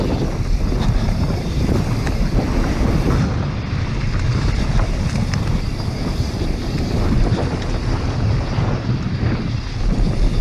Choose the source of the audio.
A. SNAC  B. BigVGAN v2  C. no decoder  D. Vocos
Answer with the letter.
C